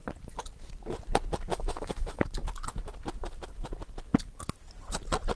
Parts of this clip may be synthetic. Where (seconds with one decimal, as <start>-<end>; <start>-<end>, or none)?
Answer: 1.5-2.2